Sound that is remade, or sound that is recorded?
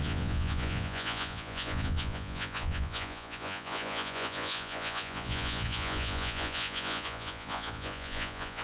remade